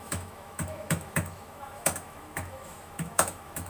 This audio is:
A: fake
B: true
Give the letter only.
A